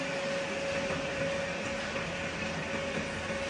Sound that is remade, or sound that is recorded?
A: recorded